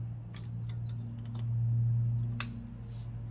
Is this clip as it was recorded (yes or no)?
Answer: yes